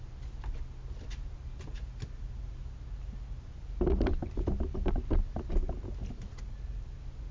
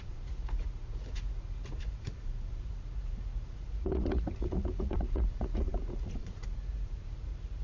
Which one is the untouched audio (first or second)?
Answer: first